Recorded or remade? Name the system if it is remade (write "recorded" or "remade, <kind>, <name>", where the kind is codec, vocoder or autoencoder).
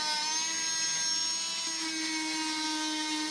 recorded